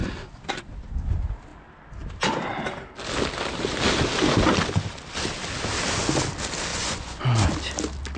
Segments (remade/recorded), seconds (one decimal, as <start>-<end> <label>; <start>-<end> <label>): 0.0-6.7 recorded; 6.7-7.2 remade; 7.2-8.2 recorded